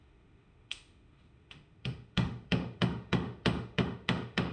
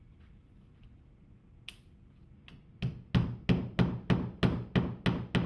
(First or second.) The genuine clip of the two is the second